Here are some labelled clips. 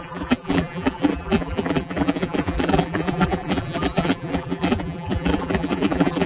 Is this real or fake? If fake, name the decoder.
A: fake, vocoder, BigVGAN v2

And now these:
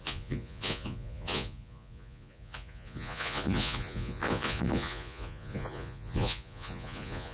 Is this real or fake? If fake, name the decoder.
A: fake, vocoder, Vocos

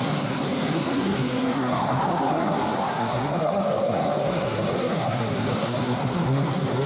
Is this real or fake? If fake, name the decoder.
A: fake, codec, SNAC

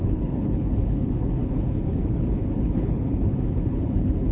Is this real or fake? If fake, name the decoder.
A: fake, codec, HILCodec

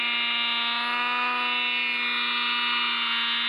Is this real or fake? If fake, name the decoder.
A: real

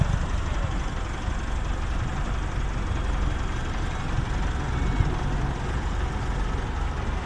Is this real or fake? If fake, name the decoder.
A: real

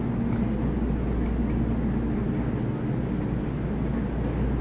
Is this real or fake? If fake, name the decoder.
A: real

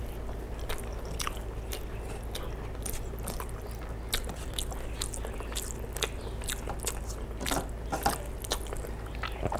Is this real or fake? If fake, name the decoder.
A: real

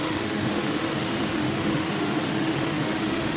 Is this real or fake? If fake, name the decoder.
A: fake, autoencoder, DAC-VAE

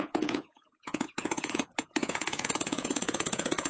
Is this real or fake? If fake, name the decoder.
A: fake, vocoder, Vocos